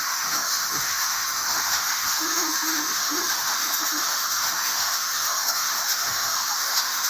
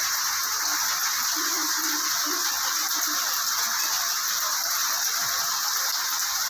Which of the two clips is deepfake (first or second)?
first